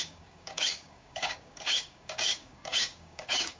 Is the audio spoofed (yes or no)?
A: yes